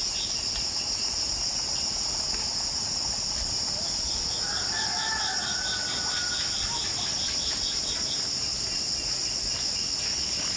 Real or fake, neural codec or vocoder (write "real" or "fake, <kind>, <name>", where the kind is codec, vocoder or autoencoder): real